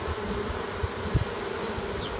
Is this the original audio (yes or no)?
yes